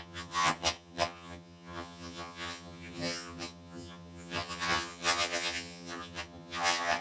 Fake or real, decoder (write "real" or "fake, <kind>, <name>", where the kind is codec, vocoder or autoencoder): fake, vocoder, HiFi-GAN